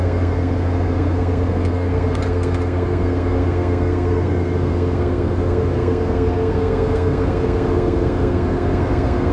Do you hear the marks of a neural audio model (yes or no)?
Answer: yes